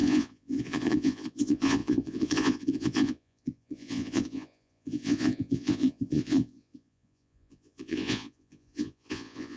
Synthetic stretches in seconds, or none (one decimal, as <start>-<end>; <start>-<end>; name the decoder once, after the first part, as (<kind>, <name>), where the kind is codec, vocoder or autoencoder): 0.0-9.6 (vocoder, Vocos)